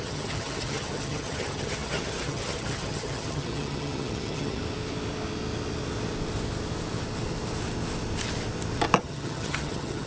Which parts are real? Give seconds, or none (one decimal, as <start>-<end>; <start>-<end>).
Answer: 4.6-9.0